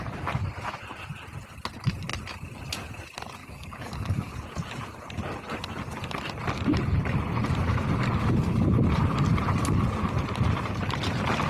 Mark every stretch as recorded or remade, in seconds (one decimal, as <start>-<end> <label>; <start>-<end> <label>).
0.0-3.4 recorded; 3.4-4.3 remade; 4.3-11.5 recorded